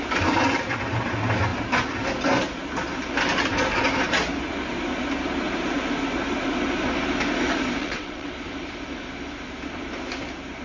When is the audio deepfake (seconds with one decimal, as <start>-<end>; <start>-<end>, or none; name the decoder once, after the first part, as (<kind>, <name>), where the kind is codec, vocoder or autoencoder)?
7.8-8.3 (vocoder, WaveNeXt)